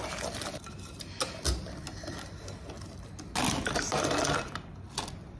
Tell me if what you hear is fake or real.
real